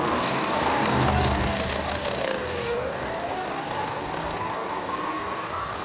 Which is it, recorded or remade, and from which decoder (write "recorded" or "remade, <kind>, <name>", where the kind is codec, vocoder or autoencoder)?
remade, codec, DAC